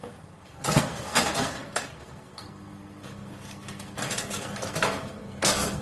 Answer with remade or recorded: remade